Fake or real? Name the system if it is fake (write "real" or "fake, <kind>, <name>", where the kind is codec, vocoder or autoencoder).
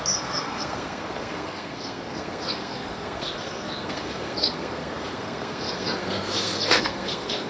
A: fake, codec, SNAC